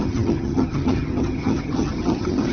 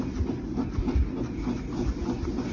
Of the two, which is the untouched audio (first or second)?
second